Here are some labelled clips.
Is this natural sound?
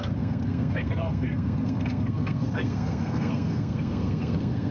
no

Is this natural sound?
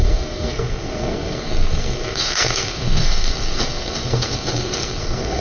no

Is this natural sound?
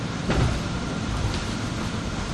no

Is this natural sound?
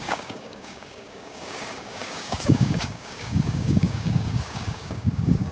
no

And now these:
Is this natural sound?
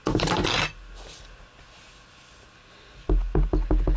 yes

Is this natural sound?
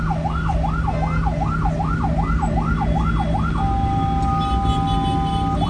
yes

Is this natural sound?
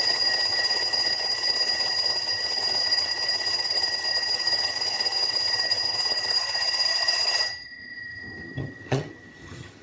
no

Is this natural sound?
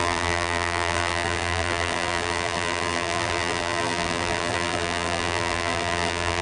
no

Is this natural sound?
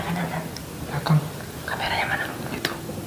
yes